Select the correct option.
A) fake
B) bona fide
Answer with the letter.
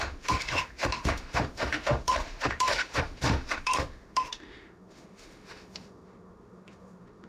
A